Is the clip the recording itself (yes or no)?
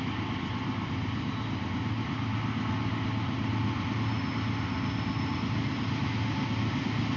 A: yes